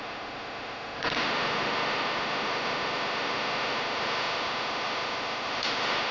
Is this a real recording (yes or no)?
no